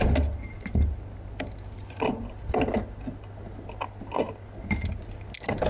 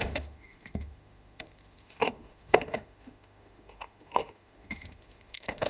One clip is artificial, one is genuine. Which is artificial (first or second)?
second